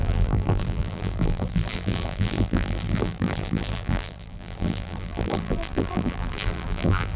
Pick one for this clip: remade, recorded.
remade